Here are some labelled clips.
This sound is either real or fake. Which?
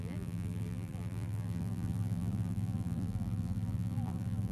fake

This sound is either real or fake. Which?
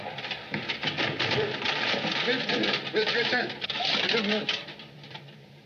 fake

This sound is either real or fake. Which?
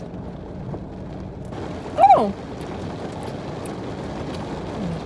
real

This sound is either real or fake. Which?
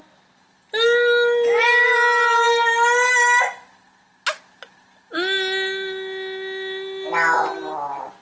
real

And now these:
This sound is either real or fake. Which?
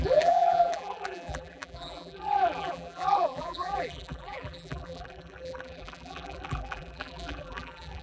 fake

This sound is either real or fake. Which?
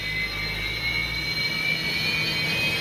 real